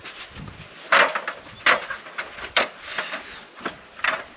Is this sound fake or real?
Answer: real